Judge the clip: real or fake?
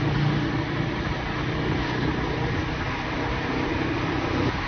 real